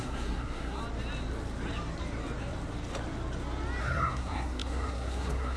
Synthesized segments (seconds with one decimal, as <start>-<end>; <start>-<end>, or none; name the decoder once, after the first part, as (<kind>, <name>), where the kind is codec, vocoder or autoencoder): 0.0-0.8 (codec, SNAC); 3.8-5.6

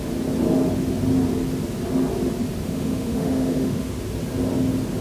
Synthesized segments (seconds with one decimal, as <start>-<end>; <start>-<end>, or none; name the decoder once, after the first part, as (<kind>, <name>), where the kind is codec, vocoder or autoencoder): 2.6-4.0 (autoencoder, DAC-VAE)

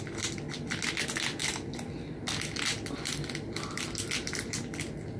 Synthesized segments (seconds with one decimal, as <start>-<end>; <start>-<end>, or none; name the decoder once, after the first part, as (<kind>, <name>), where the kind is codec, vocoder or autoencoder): none

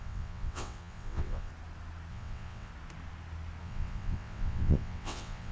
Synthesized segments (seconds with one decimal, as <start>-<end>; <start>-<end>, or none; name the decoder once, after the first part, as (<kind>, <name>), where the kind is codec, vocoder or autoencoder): 0.0-1.5 (vocoder, WaveNeXt); 2.1-2.7; 3.6-5.5